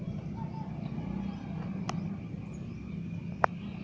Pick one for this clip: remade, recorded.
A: recorded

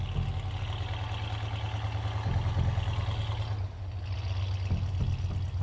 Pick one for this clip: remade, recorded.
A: recorded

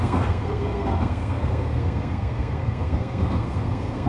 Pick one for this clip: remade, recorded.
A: remade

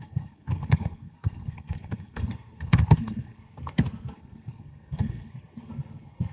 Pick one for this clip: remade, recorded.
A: remade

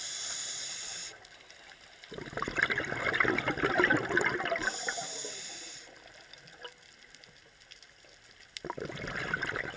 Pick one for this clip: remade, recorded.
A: recorded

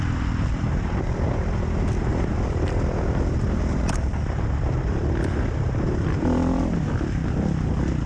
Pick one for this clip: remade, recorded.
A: remade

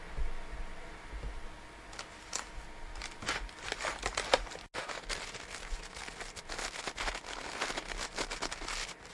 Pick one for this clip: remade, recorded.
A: recorded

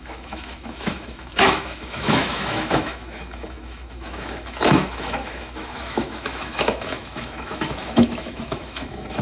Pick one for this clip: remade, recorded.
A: remade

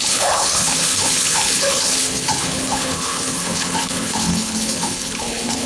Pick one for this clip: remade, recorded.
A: remade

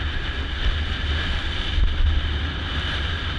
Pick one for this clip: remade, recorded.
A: recorded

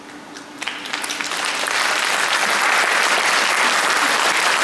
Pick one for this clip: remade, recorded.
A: recorded